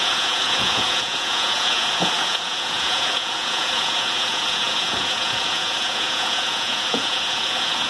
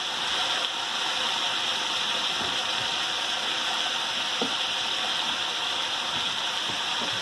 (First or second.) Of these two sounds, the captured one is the second